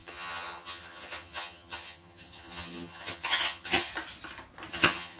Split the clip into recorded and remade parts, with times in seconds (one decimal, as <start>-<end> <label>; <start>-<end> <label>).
0.0-3.9 remade; 3.9-4.7 recorded; 4.7-5.2 remade